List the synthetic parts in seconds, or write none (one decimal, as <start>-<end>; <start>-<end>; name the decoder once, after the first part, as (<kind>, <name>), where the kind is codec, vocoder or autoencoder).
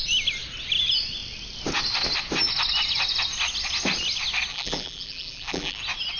4.5-5.8 (vocoder, BigVGAN v2)